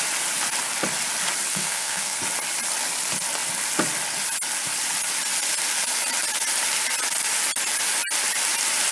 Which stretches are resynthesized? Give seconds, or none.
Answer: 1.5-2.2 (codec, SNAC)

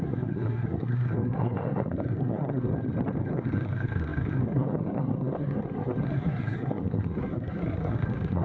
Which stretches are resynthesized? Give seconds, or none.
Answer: 0.0-2.7 (codec, SNAC); 3.2-8.4

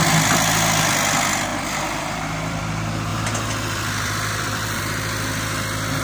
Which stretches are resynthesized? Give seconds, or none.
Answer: 1.5-2.6 (vocoder, BigVGAN v2); 3.1-4.8

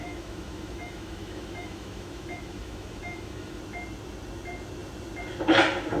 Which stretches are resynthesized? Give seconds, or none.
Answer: 0.0-3.6 (autoencoder, DAC-VAE)

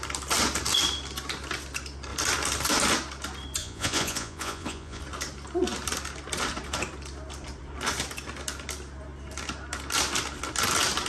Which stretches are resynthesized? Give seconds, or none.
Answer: 3.6-5.0 (vocoder, Vocos)

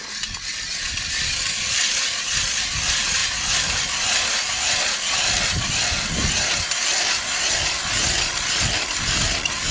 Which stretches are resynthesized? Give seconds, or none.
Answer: none

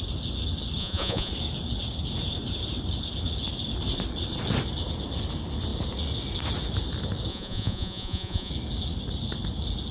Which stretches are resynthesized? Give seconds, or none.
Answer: 0.8-1.3 (vocoder, Vocos); 7.3-8.5